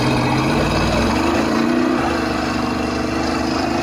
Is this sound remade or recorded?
remade